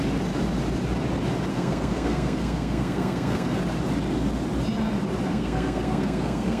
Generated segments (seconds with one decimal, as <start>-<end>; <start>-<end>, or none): 1.5-3.6; 5.3-6.6